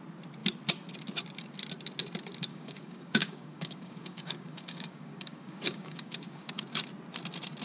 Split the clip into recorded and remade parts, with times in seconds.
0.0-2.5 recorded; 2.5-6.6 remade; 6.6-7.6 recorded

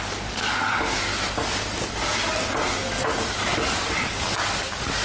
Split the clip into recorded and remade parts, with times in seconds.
0.0-1.1 remade; 1.1-2.8 recorded; 2.8-5.0 remade

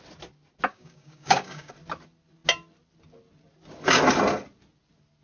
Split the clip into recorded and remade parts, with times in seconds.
0.0-0.7 recorded; 0.7-1.7 remade; 1.7-5.2 recorded